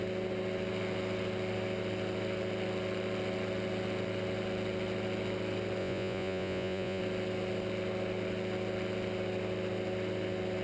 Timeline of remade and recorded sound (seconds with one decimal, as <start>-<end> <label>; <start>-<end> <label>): 0.0-5.8 recorded; 5.8-7.0 remade; 7.0-10.6 recorded